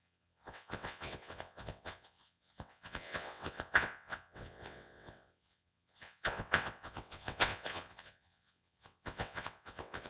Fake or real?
fake